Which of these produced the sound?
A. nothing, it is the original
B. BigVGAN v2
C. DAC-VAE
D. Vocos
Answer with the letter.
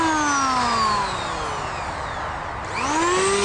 A